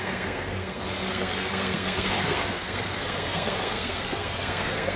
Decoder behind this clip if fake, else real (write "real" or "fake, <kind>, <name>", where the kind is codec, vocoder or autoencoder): fake, codec, SNAC